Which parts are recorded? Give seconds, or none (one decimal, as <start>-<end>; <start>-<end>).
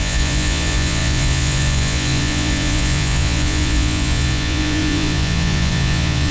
none